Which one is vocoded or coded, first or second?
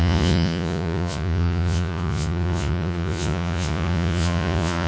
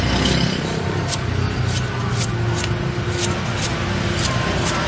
first